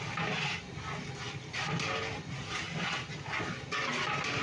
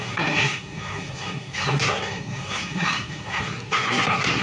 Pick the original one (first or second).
first